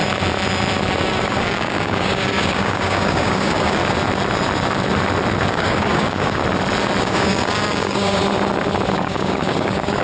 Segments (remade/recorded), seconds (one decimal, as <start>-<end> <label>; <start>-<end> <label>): 0.0-1.2 recorded; 1.2-3.8 remade; 3.8-5.5 recorded; 5.5-6.4 remade; 6.4-7.0 recorded; 7.0-8.2 remade; 8.2-8.9 recorded; 8.9-10.0 remade